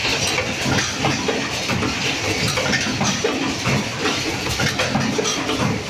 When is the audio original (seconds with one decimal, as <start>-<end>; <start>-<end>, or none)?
0.0-2.0; 4.3-5.9